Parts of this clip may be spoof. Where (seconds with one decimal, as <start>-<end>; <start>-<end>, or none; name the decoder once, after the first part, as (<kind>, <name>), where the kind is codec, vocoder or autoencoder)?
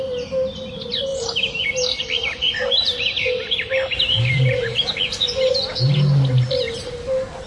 1.1-1.6 (vocoder, BigVGAN v2); 2.2-4.9